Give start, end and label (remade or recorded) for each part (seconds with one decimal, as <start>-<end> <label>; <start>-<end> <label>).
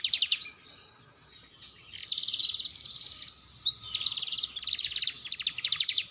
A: 0.0-6.1 recorded